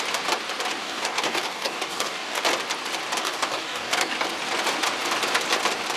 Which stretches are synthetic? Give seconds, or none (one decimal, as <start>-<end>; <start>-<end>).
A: 0.8-2.4; 3.2-4.1